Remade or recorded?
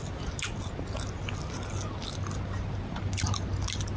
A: recorded